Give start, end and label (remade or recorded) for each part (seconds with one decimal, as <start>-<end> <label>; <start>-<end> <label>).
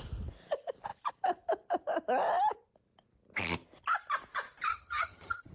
0.0-4.7 recorded; 4.7-5.5 remade